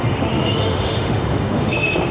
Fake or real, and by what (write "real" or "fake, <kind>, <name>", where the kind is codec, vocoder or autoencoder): fake, autoencoder, DAC-VAE